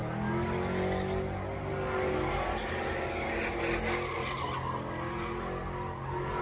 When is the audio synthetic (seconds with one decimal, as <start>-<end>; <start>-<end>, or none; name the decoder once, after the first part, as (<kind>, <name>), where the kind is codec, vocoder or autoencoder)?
none